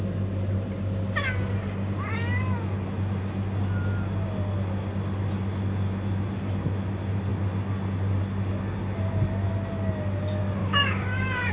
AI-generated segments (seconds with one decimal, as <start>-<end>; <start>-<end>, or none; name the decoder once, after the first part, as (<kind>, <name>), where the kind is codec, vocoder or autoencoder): 10.6-11.5 (codec, DAC)